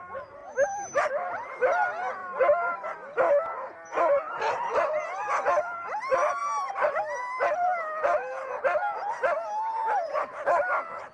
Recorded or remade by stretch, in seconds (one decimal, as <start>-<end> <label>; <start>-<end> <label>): 0.0-11.1 recorded